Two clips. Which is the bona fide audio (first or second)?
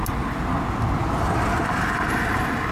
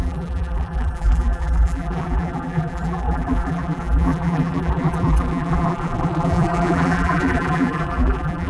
first